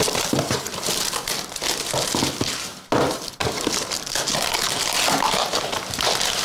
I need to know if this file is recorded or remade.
recorded